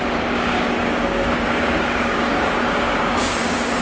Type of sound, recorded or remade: remade